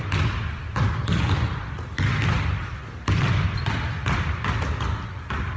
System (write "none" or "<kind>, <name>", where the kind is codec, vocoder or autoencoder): none